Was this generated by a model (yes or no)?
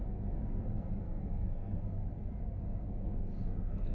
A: yes